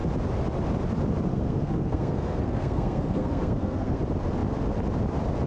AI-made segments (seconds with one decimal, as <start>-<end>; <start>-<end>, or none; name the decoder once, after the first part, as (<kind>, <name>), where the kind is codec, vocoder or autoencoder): 1.3-4.0 (codec, SNAC)